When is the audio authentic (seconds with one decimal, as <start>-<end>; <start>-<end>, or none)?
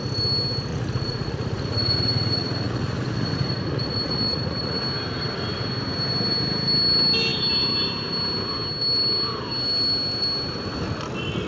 0.0-0.7; 4.8-11.5